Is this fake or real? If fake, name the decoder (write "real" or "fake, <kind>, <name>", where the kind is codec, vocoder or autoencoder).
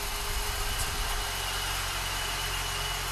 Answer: real